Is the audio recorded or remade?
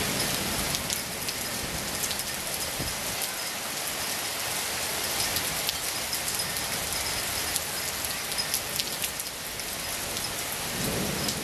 recorded